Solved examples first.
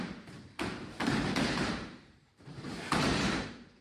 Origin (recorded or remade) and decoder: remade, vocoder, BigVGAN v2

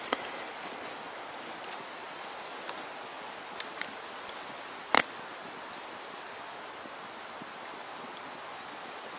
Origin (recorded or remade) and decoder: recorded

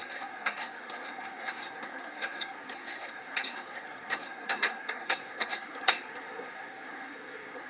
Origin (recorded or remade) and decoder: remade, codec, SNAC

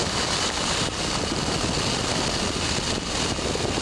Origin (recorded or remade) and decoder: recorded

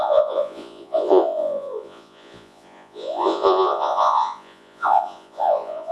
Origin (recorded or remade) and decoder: remade, vocoder, Vocos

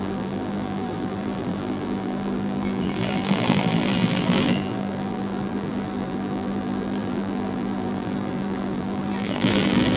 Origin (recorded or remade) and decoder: remade, vocoder, BigVGAN v2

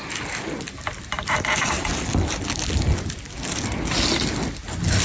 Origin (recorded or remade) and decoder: recorded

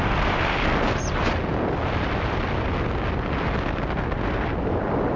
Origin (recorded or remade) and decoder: recorded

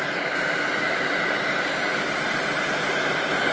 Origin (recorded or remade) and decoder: recorded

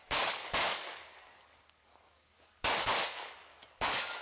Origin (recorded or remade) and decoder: remade, codec, DAC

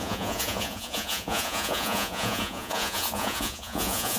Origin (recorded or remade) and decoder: remade, vocoder, Vocos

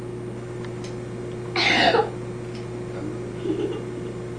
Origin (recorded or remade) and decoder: recorded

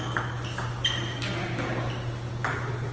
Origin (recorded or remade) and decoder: recorded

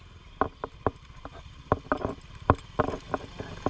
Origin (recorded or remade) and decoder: recorded